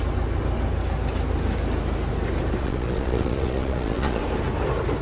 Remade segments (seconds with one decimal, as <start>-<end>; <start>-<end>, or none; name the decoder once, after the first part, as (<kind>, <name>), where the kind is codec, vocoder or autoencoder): 2.6-4.2 (vocoder, Vocos)